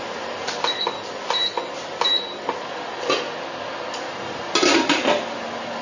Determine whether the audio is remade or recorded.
recorded